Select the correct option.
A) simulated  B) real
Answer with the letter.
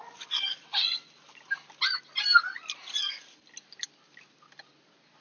B